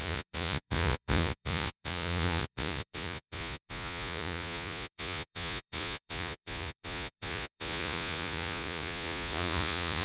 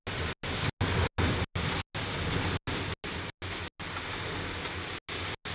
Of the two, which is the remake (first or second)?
first